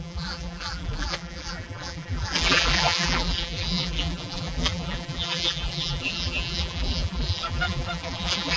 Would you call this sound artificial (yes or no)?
yes